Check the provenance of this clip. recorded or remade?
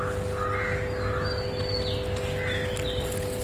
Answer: recorded